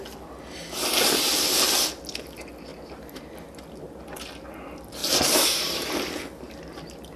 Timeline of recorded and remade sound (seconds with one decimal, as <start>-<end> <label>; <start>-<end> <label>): 0.0-2.7 recorded; 2.7-3.2 remade; 3.2-5.0 recorded; 5.0-6.2 remade; 6.2-7.2 recorded